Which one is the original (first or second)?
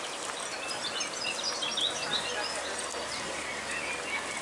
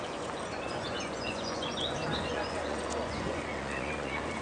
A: first